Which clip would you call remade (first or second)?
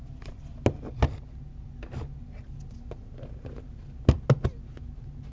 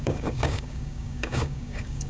second